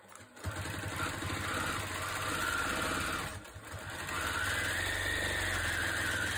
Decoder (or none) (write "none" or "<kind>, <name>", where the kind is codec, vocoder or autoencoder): none